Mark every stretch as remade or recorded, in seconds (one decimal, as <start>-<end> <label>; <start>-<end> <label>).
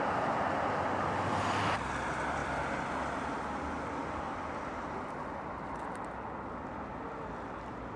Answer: 0.0-1.3 recorded; 1.3-1.9 remade; 1.9-2.4 recorded; 2.4-3.3 remade; 3.3-8.0 recorded